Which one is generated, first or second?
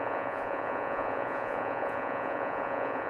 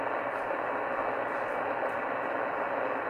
first